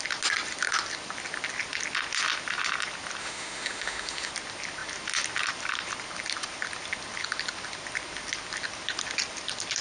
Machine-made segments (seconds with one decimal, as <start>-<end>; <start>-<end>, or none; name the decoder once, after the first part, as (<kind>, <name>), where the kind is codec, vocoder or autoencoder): 3.2-4.3 (autoencoder, DAC-VAE)